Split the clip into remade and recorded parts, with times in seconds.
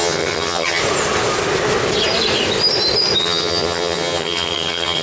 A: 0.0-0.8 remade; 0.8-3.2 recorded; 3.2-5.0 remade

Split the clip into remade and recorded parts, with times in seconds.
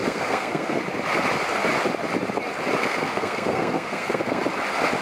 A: 0.0-0.8 remade; 0.8-2.8 recorded; 2.8-4.4 remade; 4.4-5.0 recorded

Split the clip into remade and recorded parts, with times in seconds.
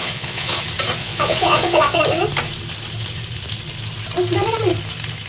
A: 0.0-0.6 remade; 0.6-1.0 recorded; 1.0-2.0 remade; 2.0-5.3 recorded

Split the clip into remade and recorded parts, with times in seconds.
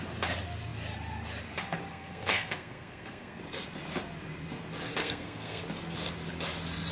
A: 0.0-1.9 recorded; 1.9-3.4 remade; 3.4-5.0 recorded; 5.0-5.6 remade; 5.6-6.9 recorded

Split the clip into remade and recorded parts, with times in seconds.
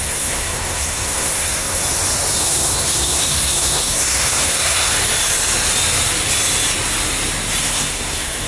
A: 0.0-1.8 remade; 1.8-2.4 recorded; 2.4-4.9 remade; 4.9-7.6 recorded; 7.6-8.5 remade